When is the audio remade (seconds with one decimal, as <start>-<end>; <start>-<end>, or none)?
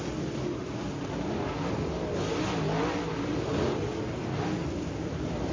none